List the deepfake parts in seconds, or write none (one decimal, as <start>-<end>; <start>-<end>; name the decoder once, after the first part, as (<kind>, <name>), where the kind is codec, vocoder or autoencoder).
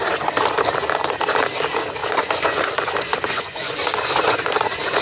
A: 2.0-2.7 (vocoder, Vocos); 3.1-4.4